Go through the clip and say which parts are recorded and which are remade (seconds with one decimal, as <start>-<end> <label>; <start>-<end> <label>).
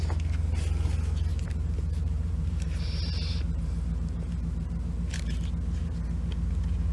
0.0-1.3 recorded; 1.3-5.4 remade; 5.4-6.9 recorded